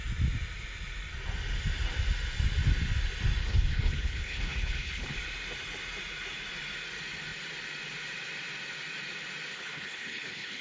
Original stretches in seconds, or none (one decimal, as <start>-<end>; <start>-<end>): 0.0-3.4; 5.2-9.5